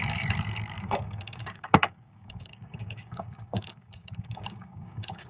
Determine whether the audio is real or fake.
fake